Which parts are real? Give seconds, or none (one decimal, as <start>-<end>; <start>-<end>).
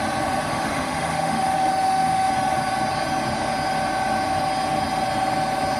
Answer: 0.0-0.5; 2.3-5.8